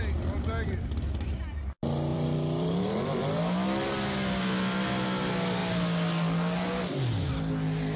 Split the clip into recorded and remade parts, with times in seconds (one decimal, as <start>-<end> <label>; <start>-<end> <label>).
0.0-2.1 recorded; 2.1-3.2 remade; 3.2-8.0 recorded